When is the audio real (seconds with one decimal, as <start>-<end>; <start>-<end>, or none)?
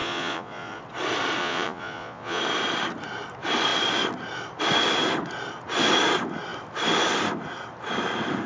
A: 0.8-1.4; 2.4-8.5